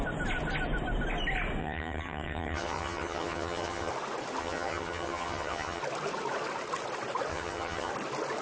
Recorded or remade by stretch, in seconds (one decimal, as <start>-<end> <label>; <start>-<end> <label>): 0.0-1.6 recorded; 1.6-3.9 remade; 3.9-4.4 recorded; 4.4-5.8 remade; 5.8-7.3 recorded; 7.3-7.9 remade; 7.9-8.4 recorded